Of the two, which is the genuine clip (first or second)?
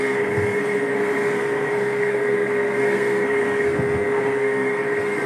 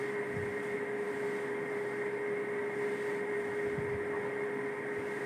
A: second